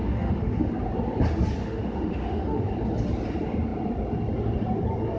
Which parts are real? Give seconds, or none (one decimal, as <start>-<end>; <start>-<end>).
0.7-1.6; 2.7-5.2